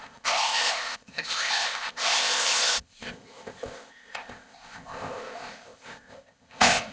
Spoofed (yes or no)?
yes